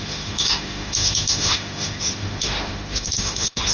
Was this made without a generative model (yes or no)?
no